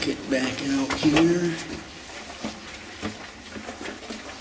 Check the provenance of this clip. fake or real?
real